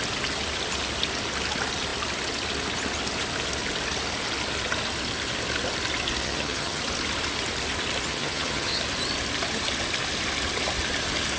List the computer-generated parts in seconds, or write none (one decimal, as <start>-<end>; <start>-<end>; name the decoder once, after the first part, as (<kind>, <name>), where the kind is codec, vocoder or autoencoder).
6.2-6.8 (vocoder, HiFi-GAN); 8.1-8.8